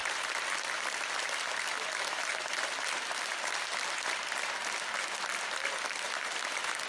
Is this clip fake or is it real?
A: real